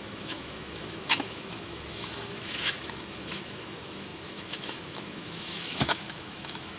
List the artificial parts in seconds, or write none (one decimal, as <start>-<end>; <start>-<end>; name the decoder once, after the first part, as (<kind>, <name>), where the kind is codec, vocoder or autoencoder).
0.0-6.8 (autoencoder, DAC-VAE)